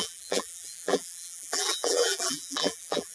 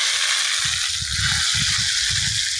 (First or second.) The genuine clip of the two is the second